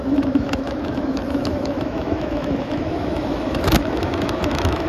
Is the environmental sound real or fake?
fake